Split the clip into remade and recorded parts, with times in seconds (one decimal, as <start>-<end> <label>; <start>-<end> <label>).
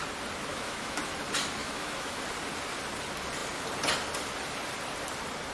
0.0-0.5 recorded; 0.5-1.0 remade; 1.0-1.6 recorded; 1.6-2.2 remade; 2.2-5.5 recorded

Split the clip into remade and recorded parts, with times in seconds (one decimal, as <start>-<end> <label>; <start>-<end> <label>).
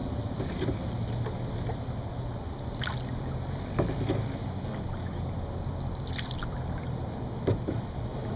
0.0-8.4 recorded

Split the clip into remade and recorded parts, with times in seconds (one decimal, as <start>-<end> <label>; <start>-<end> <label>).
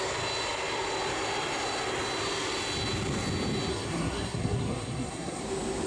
0.0-3.7 recorded; 3.7-5.4 remade; 5.4-5.9 recorded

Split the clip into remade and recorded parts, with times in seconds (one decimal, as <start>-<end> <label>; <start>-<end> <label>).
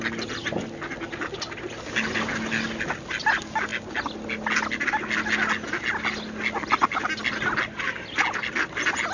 0.0-9.1 recorded